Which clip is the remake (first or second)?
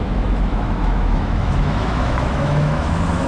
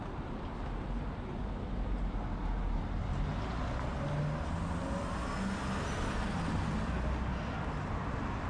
first